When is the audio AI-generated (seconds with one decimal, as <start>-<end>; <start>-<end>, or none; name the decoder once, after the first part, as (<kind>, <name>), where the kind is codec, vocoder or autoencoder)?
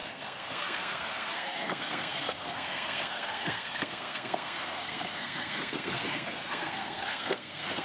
0.0-7.8 (codec, SNAC)